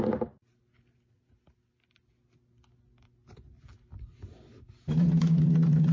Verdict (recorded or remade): recorded